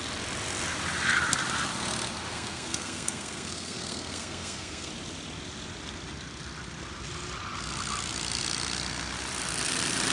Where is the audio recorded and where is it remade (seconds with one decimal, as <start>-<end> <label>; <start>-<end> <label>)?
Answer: 0.0-2.3 recorded; 2.3-4.9 remade; 4.9-10.1 recorded